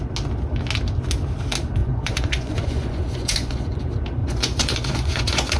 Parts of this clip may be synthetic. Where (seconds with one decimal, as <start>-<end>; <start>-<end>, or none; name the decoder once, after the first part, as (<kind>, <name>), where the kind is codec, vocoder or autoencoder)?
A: 1.8-3.8 (vocoder, Vocos); 4.2-5.6